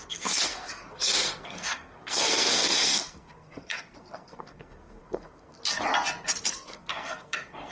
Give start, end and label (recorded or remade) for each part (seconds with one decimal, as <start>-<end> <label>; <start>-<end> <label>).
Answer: 0.0-5.6 remade; 5.6-6.5 recorded; 6.5-7.7 remade